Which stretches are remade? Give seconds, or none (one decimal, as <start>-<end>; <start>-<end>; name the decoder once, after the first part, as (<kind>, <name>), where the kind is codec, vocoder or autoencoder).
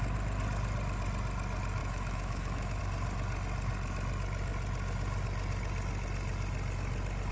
1.8-2.8 (autoencoder, DAC-VAE)